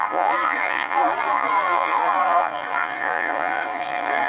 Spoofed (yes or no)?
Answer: yes